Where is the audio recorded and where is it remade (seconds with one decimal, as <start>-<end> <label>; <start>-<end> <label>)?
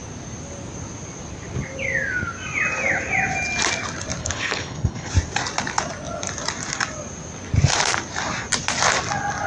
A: 0.0-4.2 recorded; 4.2-5.1 remade; 5.1-9.5 recorded